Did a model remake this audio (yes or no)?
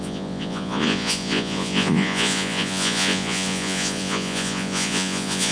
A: yes